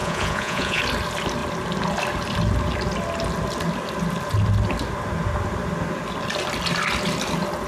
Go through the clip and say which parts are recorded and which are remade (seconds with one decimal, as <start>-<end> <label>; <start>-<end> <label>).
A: 0.0-0.8 remade; 0.8-7.7 recorded